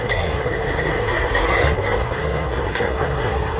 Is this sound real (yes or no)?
no